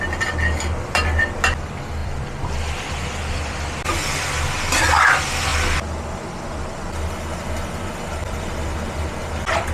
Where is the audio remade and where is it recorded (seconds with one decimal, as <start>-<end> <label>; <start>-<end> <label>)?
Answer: 0.0-2.0 recorded; 2.0-2.9 remade; 2.9-5.5 recorded; 5.5-6.6 remade; 6.6-8.2 recorded; 8.2-9.2 remade; 9.2-9.7 recorded